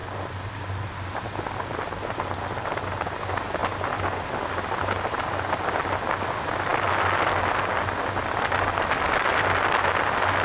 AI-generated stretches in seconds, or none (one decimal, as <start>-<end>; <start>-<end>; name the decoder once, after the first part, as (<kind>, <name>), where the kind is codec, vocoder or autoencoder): none